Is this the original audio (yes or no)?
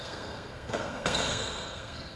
no